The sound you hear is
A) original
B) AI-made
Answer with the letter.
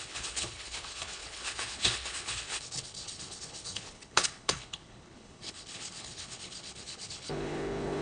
B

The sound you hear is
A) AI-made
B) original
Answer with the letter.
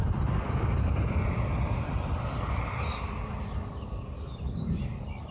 B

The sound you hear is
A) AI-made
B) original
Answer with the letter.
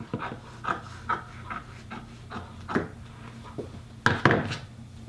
B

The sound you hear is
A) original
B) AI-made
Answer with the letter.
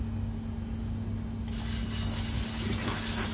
A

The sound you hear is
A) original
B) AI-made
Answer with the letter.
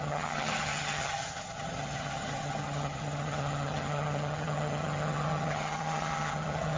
B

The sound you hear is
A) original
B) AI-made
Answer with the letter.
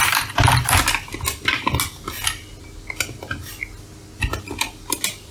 A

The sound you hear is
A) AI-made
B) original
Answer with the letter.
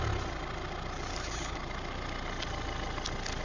B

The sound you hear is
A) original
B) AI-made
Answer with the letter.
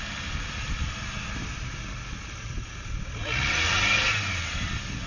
A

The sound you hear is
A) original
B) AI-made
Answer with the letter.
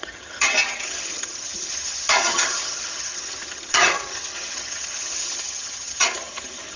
B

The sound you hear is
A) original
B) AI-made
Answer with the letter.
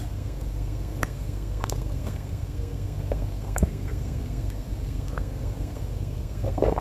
B